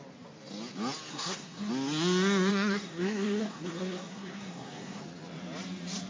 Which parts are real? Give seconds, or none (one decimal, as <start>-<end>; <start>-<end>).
0.0-1.1; 1.7-2.5; 5.0-6.1